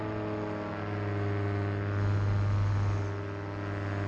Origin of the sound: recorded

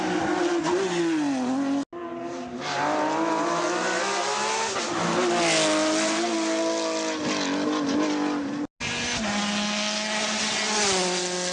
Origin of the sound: recorded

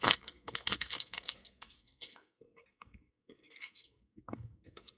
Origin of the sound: remade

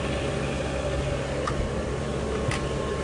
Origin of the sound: recorded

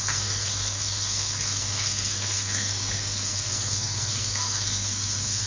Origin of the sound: remade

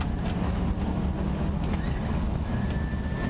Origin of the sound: recorded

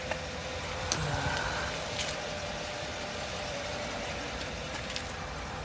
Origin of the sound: recorded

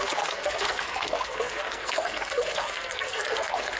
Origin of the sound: remade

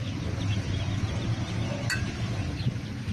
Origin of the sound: recorded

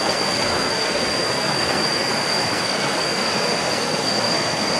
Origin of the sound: remade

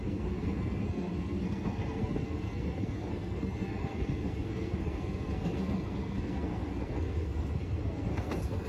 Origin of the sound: remade